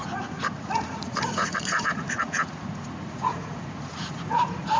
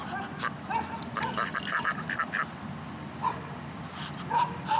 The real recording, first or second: second